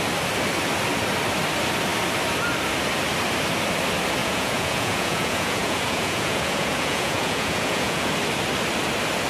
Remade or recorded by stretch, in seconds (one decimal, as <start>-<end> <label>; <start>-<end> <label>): 0.0-4.2 recorded; 4.2-8.1 remade; 8.1-9.3 recorded